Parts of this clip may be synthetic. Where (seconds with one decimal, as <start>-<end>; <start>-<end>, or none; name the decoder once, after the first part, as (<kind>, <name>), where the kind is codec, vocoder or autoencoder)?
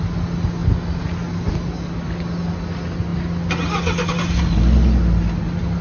none